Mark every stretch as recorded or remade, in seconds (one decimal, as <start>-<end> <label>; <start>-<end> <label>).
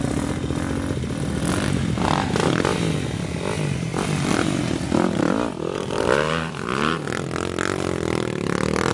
0.0-8.9 recorded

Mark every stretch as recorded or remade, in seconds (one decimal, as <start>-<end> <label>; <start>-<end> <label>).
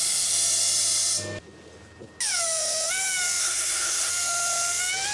0.0-3.4 recorded; 3.4-4.1 remade; 4.1-5.1 recorded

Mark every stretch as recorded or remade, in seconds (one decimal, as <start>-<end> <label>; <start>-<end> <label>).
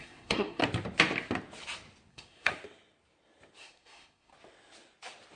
0.0-0.6 remade; 0.6-2.1 recorded; 2.1-2.5 remade; 2.5-3.6 recorded; 3.6-4.3 remade; 4.3-5.4 recorded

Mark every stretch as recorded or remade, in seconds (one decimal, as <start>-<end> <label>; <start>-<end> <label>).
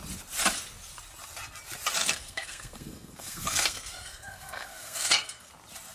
0.0-2.0 recorded; 2.0-5.5 remade; 5.5-5.9 recorded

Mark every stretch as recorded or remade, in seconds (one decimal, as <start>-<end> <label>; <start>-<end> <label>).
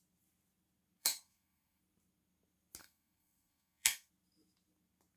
0.0-1.0 recorded; 1.0-1.8 remade; 1.8-2.8 recorded; 2.8-4.1 remade; 4.1-5.2 recorded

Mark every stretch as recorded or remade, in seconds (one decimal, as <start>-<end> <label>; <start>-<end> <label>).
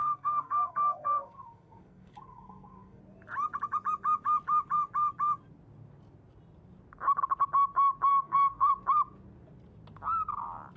0.0-3.0 remade; 3.0-8.1 recorded; 8.1-8.7 remade; 8.7-10.8 recorded